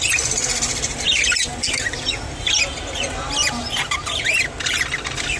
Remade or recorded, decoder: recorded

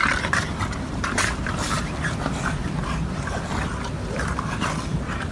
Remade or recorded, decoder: recorded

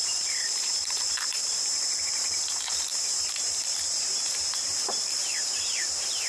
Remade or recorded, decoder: remade, vocoder, BigVGAN v2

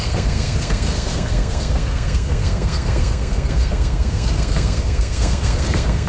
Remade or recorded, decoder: remade, codec, SNAC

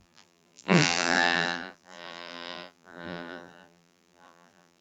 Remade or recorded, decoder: remade, vocoder, BigVGAN v2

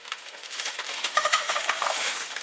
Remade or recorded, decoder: remade, autoencoder, DAC-VAE